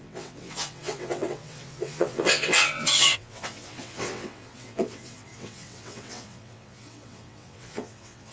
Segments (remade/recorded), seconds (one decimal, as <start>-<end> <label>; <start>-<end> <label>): 0.0-8.3 remade

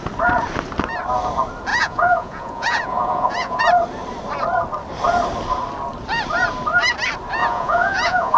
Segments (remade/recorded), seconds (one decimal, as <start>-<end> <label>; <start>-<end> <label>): 0.0-1.7 recorded; 1.7-3.6 remade; 3.6-7.4 recorded; 7.4-8.4 remade

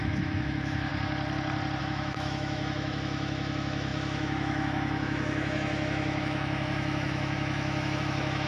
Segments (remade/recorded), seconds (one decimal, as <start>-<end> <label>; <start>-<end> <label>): 0.0-0.9 remade; 0.9-1.8 recorded; 1.8-8.5 remade

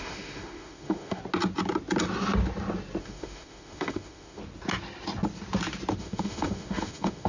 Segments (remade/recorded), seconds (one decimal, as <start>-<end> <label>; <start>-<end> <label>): 0.0-1.2 remade; 1.2-3.0 recorded; 3.0-4.4 remade; 4.4-6.0 recorded; 6.0-7.3 remade

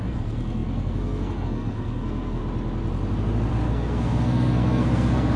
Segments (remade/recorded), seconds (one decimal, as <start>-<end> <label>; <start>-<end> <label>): 0.0-2.4 remade; 2.4-3.5 recorded; 3.5-5.4 remade

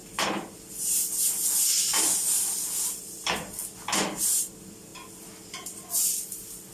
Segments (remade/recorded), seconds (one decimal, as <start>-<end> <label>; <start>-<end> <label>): 0.0-1.9 recorded; 1.9-3.3 remade; 3.3-6.7 recorded

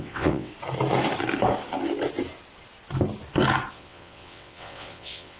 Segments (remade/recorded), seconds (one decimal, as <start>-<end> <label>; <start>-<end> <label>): 0.0-0.5 remade; 0.5-3.7 recorded; 3.7-5.4 remade

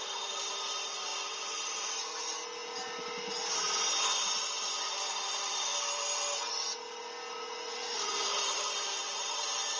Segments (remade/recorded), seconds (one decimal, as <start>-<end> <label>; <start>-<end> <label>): 0.0-1.1 remade; 1.1-5.2 recorded; 5.2-5.7 remade; 5.7-7.9 recorded; 7.9-9.8 remade